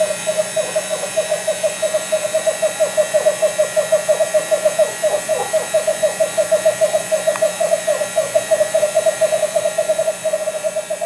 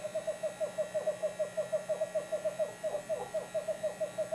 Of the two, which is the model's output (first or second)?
first